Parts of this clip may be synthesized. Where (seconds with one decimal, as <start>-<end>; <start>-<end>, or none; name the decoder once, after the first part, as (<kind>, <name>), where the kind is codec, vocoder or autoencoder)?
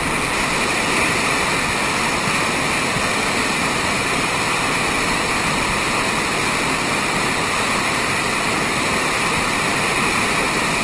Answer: none